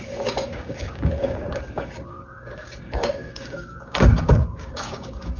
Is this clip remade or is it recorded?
remade